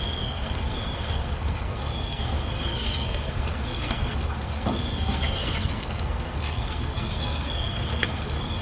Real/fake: fake